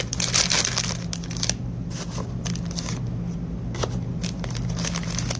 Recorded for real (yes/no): yes